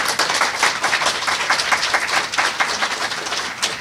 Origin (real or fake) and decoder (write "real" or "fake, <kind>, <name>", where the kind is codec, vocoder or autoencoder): real